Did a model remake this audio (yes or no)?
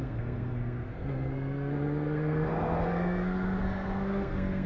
yes